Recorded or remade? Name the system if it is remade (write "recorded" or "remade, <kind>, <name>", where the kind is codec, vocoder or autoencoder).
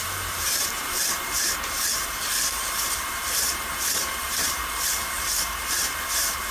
remade, vocoder, BigVGAN v2